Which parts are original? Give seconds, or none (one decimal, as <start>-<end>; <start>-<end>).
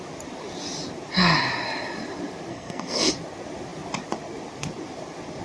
0.0-2.5; 3.1-5.4